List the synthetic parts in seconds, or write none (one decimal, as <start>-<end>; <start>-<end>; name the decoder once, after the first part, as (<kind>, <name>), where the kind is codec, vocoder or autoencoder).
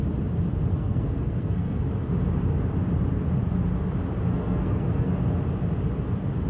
0.7-1.8 (codec, SNAC); 4.3-5.1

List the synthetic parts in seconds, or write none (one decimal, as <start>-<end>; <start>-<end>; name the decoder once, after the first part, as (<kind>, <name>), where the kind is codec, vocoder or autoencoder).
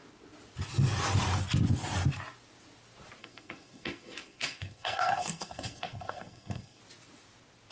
3.2-6.8 (codec, SNAC)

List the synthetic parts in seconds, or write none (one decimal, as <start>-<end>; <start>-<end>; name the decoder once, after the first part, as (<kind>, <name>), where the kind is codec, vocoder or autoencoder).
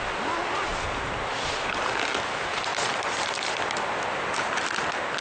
none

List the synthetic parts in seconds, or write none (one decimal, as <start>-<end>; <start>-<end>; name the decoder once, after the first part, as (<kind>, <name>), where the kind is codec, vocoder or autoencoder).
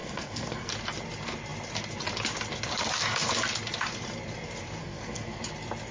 0.0-0.7 (codec, SNAC); 4.8-5.4